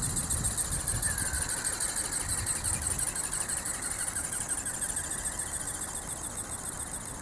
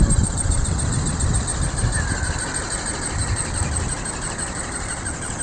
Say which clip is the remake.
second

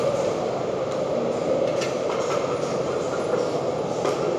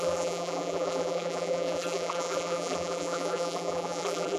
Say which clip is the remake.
second